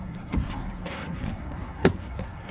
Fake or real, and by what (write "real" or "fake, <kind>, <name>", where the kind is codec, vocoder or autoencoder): fake, codec, SNAC